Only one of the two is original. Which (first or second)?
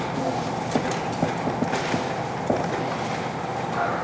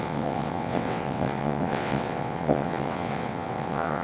first